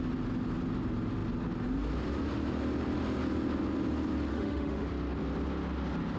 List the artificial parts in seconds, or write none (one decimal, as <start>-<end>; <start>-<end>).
4.3-4.9